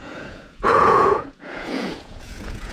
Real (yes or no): no